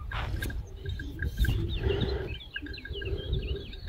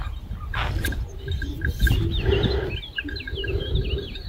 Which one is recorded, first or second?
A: second